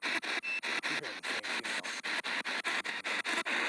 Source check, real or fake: real